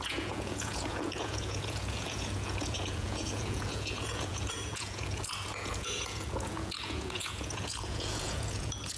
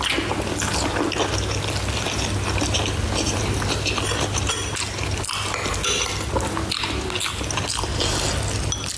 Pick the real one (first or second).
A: second